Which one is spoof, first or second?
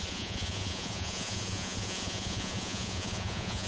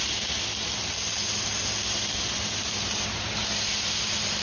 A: first